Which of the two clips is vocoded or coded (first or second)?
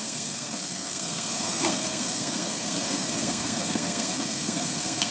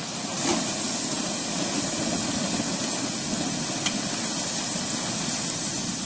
first